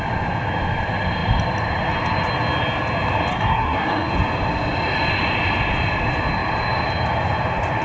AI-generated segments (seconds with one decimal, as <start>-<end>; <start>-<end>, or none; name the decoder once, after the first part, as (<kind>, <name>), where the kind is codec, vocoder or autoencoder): 3.3-4.1 (codec, SNAC)